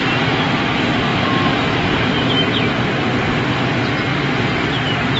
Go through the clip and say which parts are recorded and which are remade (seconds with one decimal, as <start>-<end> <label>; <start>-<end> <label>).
0.0-1.1 recorded; 1.1-2.0 remade; 2.0-5.2 recorded